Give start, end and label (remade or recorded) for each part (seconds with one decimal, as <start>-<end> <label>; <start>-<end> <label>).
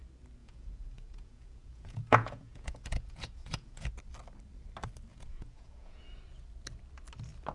0.0-0.4 recorded; 0.4-3.9 remade; 3.9-5.1 recorded; 5.1-6.0 remade; 6.0-7.5 recorded